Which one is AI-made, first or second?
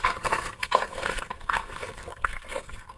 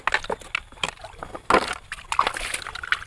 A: first